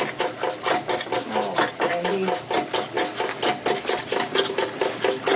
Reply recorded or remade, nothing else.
recorded